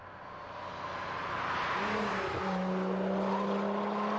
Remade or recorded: recorded